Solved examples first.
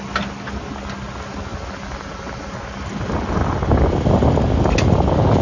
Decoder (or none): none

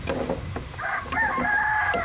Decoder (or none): none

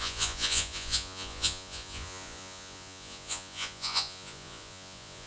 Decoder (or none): vocoder, Vocos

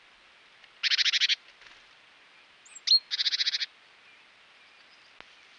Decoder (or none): none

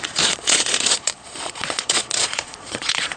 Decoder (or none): vocoder, Vocos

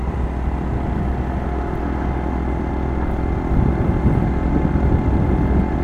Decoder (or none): none